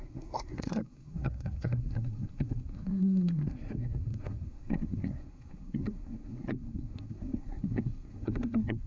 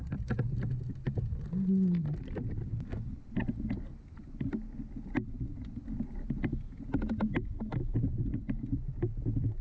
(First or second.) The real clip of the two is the second